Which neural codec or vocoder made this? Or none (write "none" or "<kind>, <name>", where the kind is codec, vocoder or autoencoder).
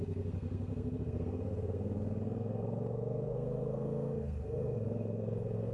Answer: codec, SNAC